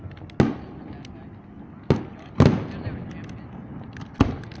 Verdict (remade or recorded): recorded